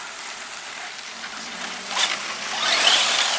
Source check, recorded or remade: recorded